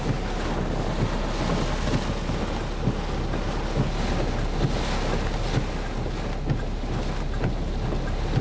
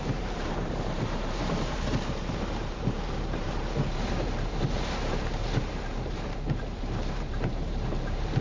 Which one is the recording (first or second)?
first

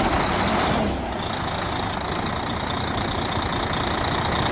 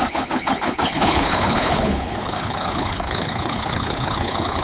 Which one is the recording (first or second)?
first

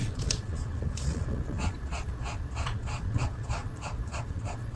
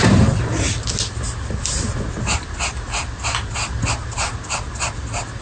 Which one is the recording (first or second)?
second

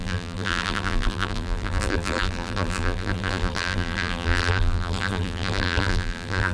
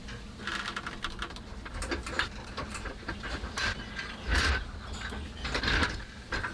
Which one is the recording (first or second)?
second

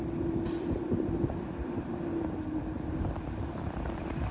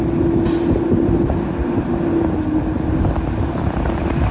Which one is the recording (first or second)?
second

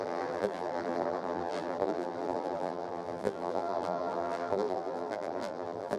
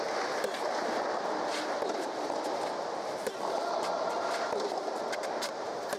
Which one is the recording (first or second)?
second